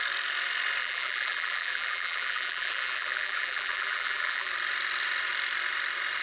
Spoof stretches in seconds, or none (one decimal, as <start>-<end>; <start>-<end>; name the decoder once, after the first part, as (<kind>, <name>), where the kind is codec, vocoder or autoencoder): 0.8-4.5 (vocoder, BigVGAN v2)